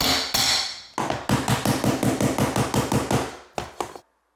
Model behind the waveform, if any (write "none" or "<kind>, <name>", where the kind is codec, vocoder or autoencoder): none